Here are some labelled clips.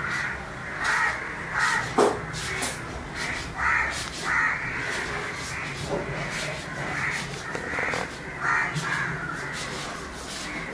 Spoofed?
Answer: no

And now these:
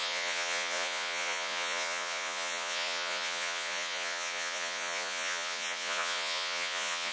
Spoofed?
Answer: yes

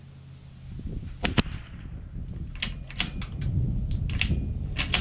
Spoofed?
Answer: no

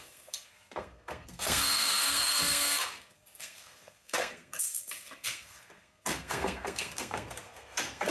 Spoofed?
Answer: yes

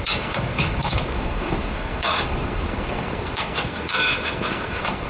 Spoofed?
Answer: yes